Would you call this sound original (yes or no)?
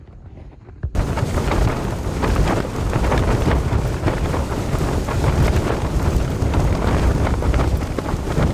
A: yes